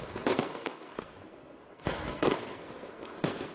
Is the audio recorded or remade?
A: remade